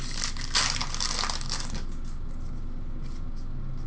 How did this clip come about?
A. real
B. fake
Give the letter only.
A